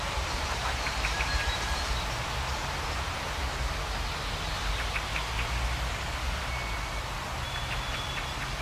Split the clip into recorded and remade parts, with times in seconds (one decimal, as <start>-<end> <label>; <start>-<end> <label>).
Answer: 0.0-0.6 recorded; 0.6-3.6 remade; 3.6-8.6 recorded

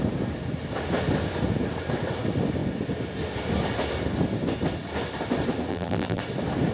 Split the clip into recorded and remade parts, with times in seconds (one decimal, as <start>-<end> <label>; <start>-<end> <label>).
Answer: 0.0-5.7 recorded; 5.7-6.2 remade; 6.2-6.7 recorded

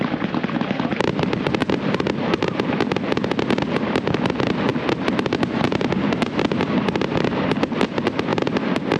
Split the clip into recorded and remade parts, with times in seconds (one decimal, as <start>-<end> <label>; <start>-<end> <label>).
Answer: 0.0-1.6 recorded; 1.6-3.9 remade; 3.9-8.3 recorded; 8.3-9.0 remade

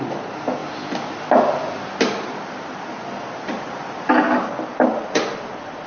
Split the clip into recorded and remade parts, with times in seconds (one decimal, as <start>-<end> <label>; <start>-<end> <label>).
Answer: 0.0-5.9 recorded

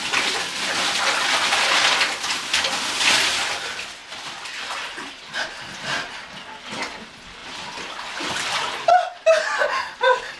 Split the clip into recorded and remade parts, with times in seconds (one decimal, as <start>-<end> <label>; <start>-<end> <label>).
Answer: 0.0-4.0 recorded; 4.0-6.3 remade; 6.3-7.4 recorded; 7.4-9.8 remade; 9.8-10.4 recorded

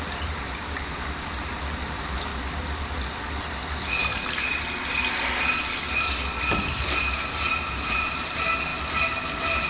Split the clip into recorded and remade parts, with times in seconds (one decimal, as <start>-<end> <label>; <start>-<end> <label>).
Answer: 0.0-2.3 remade; 2.3-7.0 recorded; 7.0-8.7 remade; 8.7-9.7 recorded

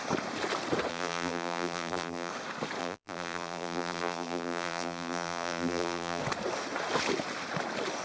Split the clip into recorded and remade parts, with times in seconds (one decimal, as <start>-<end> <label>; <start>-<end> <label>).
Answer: 0.0-0.9 recorded; 0.9-2.3 remade; 2.3-2.8 recorded; 2.8-6.2 remade; 6.2-8.0 recorded